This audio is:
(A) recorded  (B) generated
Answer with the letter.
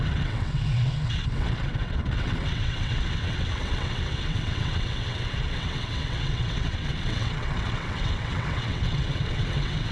B